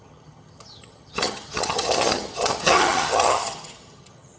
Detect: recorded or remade remade